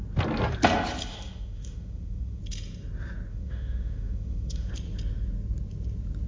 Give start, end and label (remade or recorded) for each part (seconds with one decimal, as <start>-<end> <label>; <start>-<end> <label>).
0.0-1.1 recorded; 1.1-2.4 remade; 2.4-3.3 recorded; 3.3-4.7 remade; 4.7-6.3 recorded